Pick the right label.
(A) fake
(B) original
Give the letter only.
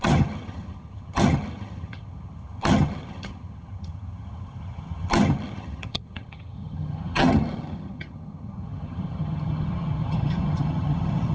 A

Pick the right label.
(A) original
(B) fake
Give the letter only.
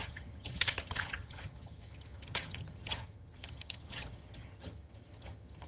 B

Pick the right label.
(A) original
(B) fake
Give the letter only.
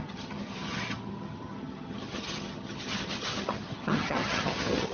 B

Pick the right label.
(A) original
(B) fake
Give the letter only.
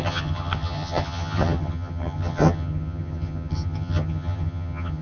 B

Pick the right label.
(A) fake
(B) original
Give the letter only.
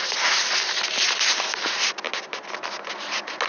B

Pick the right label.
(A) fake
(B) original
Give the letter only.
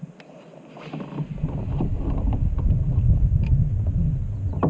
B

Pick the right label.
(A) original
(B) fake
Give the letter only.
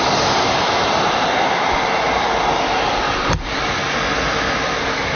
A